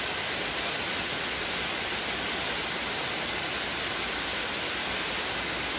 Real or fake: real